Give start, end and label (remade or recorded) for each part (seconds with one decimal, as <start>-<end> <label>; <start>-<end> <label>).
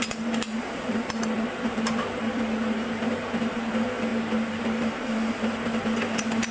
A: 0.0-6.5 remade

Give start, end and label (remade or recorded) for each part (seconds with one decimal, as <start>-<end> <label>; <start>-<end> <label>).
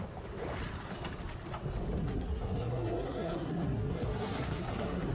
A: 0.0-2.0 recorded; 2.0-5.1 remade